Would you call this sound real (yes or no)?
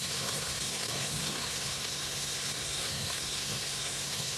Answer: no